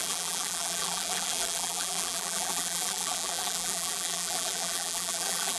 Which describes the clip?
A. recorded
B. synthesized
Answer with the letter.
B